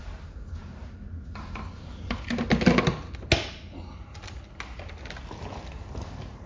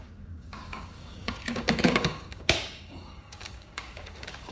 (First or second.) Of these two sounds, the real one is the first